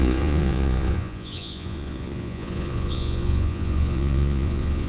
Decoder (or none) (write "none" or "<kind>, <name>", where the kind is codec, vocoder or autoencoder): vocoder, Vocos